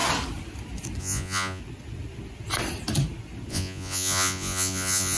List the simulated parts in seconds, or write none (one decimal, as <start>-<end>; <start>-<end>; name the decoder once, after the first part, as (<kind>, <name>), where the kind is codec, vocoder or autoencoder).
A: 1.0-1.6 (vocoder, Vocos); 3.5-5.2